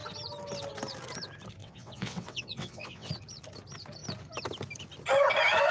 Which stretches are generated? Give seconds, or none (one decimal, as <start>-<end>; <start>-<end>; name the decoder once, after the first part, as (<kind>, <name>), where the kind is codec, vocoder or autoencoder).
1.6-3.1 (vocoder, WaveNeXt)